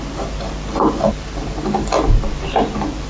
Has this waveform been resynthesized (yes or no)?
no